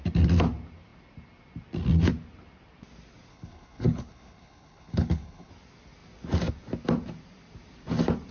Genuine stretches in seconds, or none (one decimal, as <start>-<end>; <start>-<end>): 0.0-3.3; 5.5-8.3